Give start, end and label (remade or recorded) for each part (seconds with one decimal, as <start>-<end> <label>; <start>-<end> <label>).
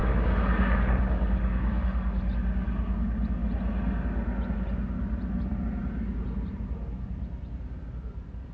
0.0-2.2 remade; 2.2-8.5 recorded